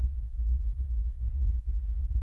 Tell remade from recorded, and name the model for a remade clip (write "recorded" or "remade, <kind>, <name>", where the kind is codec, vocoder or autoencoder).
remade, codec, SNAC